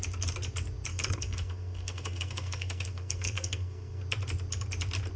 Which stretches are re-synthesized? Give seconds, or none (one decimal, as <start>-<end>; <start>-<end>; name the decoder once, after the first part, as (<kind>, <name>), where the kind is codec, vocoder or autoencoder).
0.9-4.0 (codec, SNAC)